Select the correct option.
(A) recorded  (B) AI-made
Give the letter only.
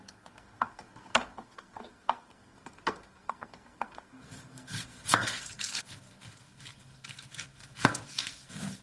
B